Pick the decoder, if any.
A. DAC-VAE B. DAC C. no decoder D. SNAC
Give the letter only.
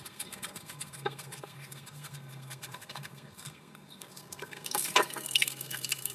D